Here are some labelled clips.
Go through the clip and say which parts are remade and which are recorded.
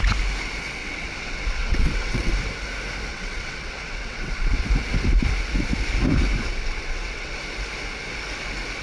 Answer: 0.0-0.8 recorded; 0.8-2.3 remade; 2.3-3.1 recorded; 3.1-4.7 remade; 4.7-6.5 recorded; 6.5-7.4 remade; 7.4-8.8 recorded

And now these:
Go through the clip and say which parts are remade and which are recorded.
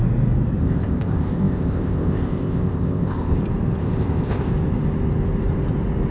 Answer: 0.0-0.6 recorded; 0.6-3.4 remade; 3.4-3.8 recorded; 3.8-4.5 remade; 4.5-6.1 recorded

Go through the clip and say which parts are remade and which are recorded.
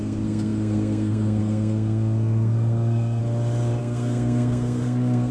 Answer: 0.0-3.2 remade; 3.2-3.8 recorded; 3.8-5.3 remade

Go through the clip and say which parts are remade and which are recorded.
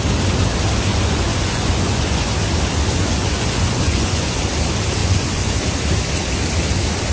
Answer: 0.0-0.9 recorded; 0.9-2.3 remade; 2.3-3.0 recorded; 3.0-4.5 remade; 4.5-5.0 recorded; 5.0-5.6 remade; 5.6-7.1 recorded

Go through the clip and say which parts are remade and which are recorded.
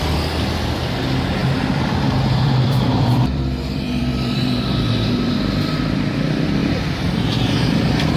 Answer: 0.0-1.4 recorded; 1.4-5.8 remade; 5.8-6.6 recorded; 6.6-7.2 remade; 7.2-8.2 recorded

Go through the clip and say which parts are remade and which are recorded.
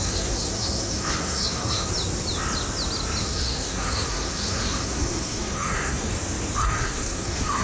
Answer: 0.0-1.9 remade; 1.9-3.2 recorded; 3.2-6.1 remade; 6.1-6.6 recorded; 6.6-7.6 remade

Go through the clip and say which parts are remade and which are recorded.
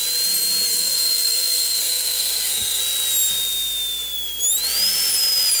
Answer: 0.0-0.7 recorded; 0.7-2.8 remade; 2.8-5.6 recorded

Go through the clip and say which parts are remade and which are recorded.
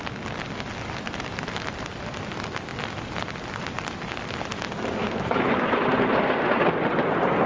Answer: 0.0-5.0 recorded; 5.0-5.8 remade; 5.8-7.5 recorded